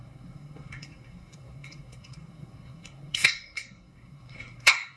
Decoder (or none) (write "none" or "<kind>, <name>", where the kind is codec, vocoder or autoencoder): codec, SNAC